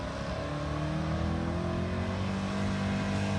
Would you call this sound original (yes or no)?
yes